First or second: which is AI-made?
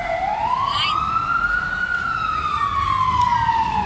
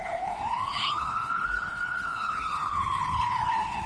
second